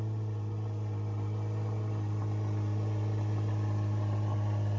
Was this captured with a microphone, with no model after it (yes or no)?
yes